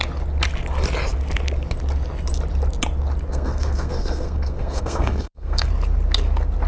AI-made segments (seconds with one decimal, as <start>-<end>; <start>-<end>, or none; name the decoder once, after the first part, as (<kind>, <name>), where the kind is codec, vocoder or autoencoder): 3.3-5.7 (codec, SNAC)